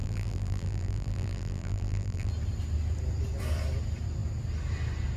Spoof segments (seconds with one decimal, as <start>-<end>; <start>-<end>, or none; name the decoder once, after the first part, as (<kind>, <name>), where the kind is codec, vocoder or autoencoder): 0.0-2.3 (vocoder, BigVGAN v2)